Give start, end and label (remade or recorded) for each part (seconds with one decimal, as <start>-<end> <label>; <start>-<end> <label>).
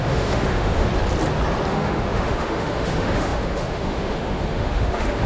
0.0-0.9 remade; 0.9-1.7 recorded; 1.7-5.3 remade